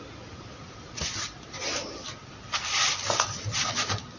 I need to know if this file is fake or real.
real